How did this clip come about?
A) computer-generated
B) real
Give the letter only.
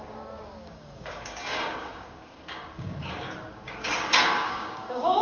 A